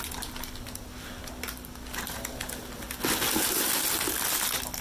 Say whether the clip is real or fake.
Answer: real